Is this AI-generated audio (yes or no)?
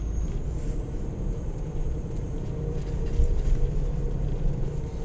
yes